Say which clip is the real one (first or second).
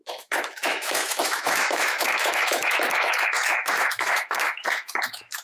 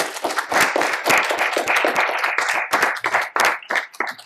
second